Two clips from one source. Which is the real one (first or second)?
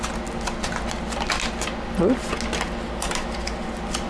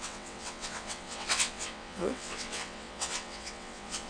first